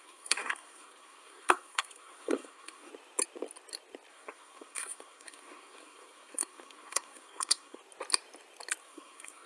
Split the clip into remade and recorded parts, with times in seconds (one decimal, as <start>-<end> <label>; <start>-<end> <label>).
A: 0.0-2.9 remade; 2.9-4.1 recorded; 4.1-7.8 remade; 7.8-8.8 recorded; 8.8-9.5 remade